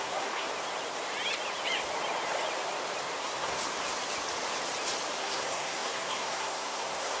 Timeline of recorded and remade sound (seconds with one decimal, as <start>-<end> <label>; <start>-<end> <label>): 0.0-0.5 remade; 0.5-3.2 recorded; 3.2-3.6 remade; 3.6-5.2 recorded; 5.2-7.2 remade

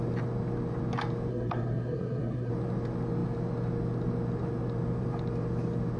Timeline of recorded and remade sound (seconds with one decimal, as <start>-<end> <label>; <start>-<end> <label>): 0.0-1.3 recorded; 1.3-2.5 remade; 2.5-6.0 recorded

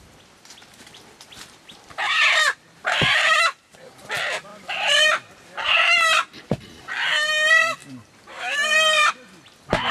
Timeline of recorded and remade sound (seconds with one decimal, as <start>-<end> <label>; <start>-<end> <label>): 0.0-9.9 recorded